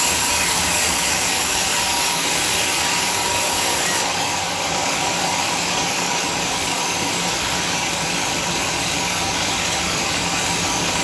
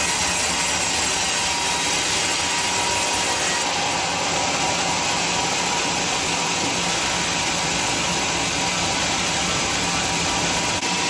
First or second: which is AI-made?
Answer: first